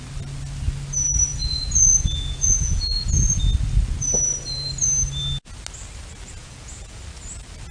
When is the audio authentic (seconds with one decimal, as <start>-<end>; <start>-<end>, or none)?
0.0-1.3; 3.4-6.4; 7.0-7.7